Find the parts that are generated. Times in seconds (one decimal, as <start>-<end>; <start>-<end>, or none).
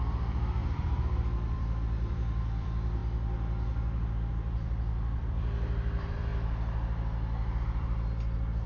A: 0.0-3.0; 4.3-6.3; 7.6-8.7